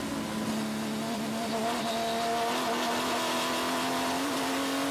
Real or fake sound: real